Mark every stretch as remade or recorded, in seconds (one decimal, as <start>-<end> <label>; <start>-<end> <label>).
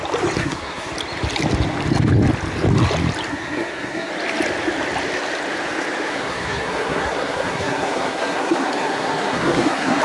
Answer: 0.0-0.4 recorded; 0.4-0.9 remade; 0.9-3.3 recorded; 3.3-4.1 remade; 4.1-6.1 recorded; 6.1-10.0 remade